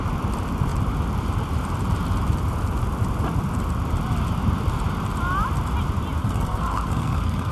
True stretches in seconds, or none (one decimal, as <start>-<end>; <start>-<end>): 0.0-6.2